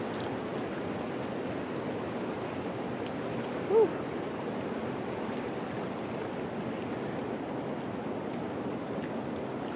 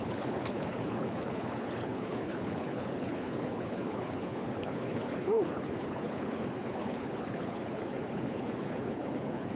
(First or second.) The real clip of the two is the first